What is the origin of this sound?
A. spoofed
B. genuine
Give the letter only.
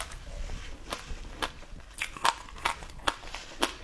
B